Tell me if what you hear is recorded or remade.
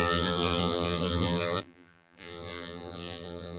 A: remade